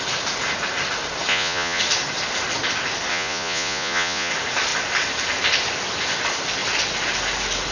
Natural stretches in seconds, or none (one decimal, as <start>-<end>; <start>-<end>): 0.0-1.3; 1.8-3.1; 4.3-7.7